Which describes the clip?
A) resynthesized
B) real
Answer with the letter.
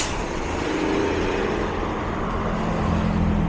B